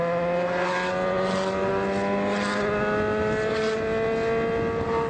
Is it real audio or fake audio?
real